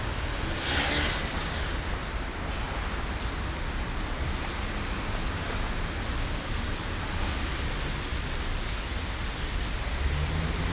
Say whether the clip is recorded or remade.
recorded